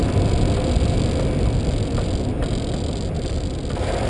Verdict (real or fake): real